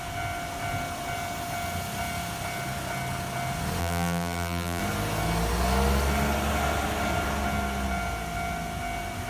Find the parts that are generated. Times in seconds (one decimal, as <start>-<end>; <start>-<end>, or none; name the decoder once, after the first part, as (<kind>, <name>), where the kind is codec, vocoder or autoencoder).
3.8-4.8 (vocoder, BigVGAN v2)